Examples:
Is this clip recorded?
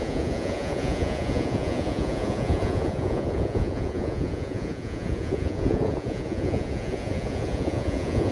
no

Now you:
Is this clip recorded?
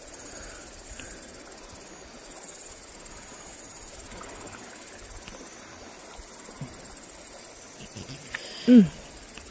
yes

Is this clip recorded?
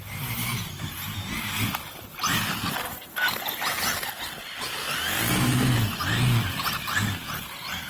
yes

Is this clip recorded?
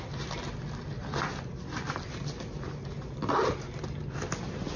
yes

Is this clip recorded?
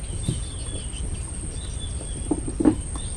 yes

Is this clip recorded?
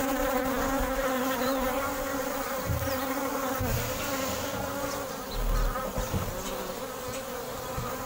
yes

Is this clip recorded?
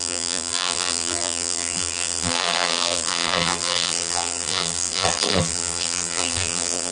no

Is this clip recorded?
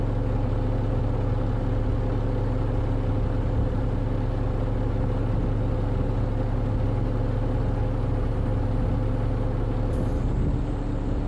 yes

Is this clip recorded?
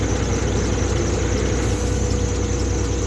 yes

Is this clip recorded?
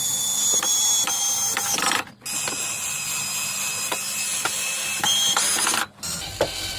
yes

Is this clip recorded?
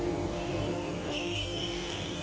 no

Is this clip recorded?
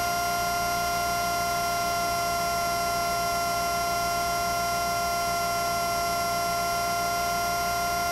yes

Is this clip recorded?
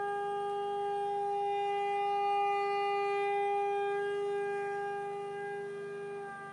yes